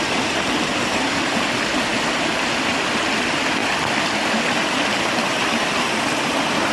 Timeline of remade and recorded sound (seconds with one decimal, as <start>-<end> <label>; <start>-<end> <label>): 0.0-6.7 recorded